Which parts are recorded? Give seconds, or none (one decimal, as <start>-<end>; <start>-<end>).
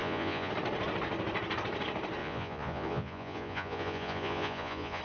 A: 0.5-2.2